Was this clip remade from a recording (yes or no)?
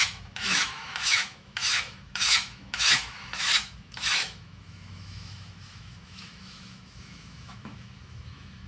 yes